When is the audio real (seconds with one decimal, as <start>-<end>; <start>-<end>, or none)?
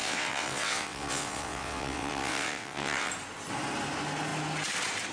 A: 3.1-5.1